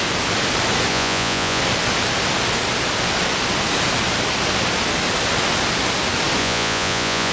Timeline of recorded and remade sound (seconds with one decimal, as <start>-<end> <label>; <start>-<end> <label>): 0.0-0.9 recorded; 0.9-1.6 remade; 1.6-6.4 recorded; 6.4-7.3 remade